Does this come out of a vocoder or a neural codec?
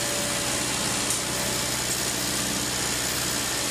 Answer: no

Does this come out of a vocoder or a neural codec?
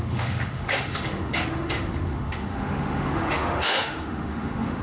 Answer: yes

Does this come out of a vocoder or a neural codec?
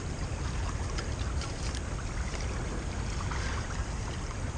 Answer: no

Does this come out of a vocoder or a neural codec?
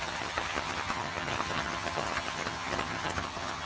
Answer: yes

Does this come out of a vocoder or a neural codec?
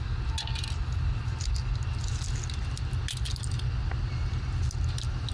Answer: no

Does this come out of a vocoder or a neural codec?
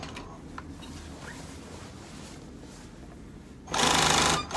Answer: no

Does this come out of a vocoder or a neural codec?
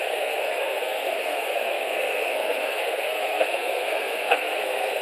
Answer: yes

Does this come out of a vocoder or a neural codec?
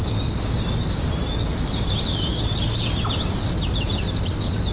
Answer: no